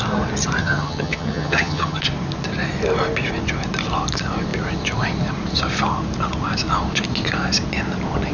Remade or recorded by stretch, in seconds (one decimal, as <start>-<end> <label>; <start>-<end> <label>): 0.0-0.6 recorded; 0.6-2.0 remade; 2.0-8.3 recorded